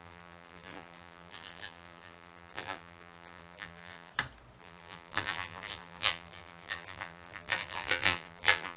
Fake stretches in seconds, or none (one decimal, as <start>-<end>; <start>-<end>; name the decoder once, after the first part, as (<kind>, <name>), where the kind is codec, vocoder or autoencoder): 0.0-4.1 (vocoder, BigVGAN v2); 4.6-8.8